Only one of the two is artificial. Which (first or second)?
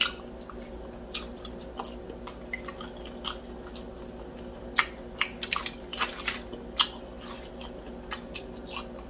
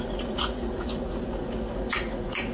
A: second